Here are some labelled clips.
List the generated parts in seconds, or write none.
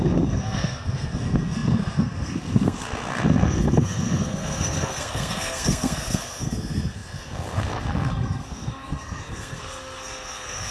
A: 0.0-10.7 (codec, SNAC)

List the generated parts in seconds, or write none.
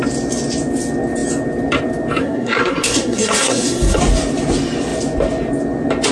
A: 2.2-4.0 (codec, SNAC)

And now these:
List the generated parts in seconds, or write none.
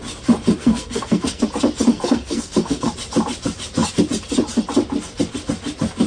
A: 0.6-1.4 (codec, SNAC); 1.9-2.9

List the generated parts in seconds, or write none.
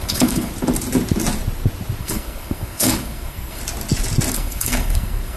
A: 0.0-0.5 (codec, SNAC); 2.0-3.6; 4.3-5.4